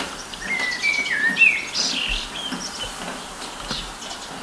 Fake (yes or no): no